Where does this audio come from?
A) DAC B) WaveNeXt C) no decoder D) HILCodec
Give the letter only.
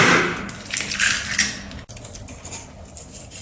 C